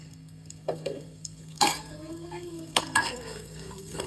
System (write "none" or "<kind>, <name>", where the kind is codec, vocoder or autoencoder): codec, SNAC